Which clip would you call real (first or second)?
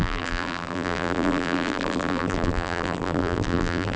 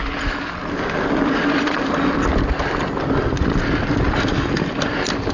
second